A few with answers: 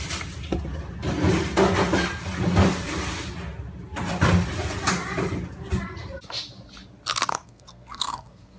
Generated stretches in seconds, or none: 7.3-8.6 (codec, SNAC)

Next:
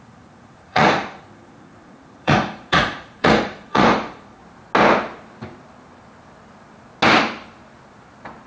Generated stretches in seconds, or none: 0.0-4.4 (vocoder, Vocos)

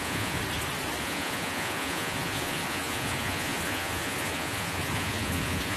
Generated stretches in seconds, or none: 0.0-0.4 (vocoder, Vocos); 1.0-5.8

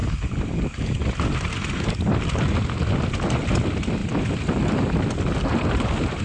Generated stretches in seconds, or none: none

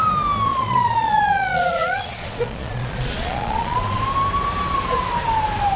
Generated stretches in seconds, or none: 0.5-4.0 (vocoder, Vocos)

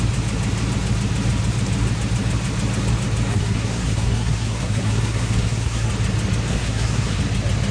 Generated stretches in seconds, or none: 3.3-5.9 (codec, SNAC); 6.5-7.2